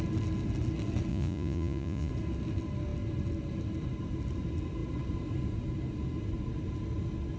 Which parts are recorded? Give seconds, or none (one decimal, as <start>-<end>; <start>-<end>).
0.0-1.1; 2.1-7.4